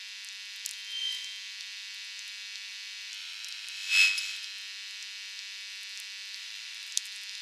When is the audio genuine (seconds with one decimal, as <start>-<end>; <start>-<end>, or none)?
0.0-3.2; 3.7-6.4; 6.9-7.4